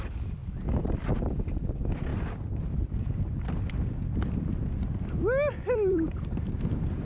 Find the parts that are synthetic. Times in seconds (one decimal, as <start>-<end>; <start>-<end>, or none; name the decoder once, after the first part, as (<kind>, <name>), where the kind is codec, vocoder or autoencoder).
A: 0.0-0.4 (vocoder, BigVGAN v2); 1.5-2.1; 2.6-4.0; 5.5-7.0